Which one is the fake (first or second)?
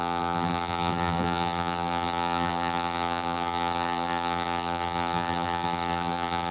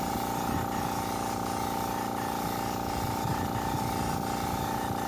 first